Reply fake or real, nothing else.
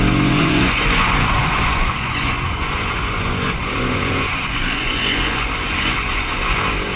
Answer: fake